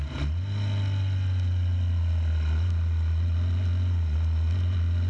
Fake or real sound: real